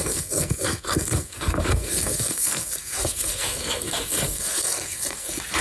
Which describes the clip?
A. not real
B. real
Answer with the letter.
A